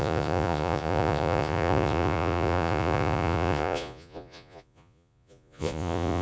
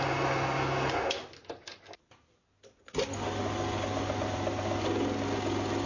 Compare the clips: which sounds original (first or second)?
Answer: second